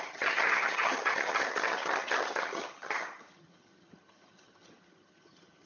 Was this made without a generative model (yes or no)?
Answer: no